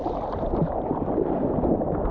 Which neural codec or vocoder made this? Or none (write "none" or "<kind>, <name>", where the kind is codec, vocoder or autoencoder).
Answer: none